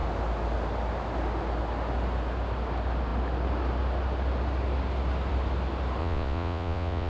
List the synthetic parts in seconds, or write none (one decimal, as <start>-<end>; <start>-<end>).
6.0-7.1